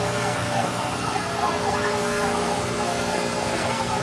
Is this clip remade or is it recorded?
remade